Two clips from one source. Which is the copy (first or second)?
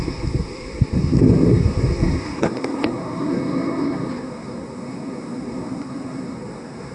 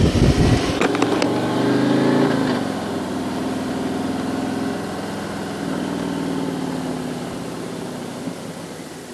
first